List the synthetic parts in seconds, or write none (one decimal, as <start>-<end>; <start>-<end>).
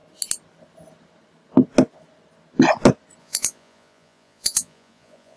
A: 3.2-5.4